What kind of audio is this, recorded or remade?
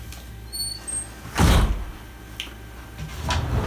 recorded